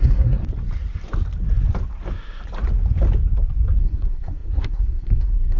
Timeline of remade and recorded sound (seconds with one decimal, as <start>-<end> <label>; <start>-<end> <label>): 0.0-0.4 remade; 0.4-3.8 recorded; 3.8-5.6 remade

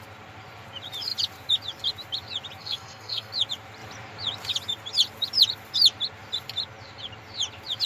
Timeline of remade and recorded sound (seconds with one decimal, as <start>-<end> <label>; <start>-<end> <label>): 0.0-2.6 recorded; 2.6-3.3 remade; 3.3-7.9 recorded